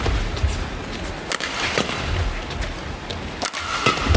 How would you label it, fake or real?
real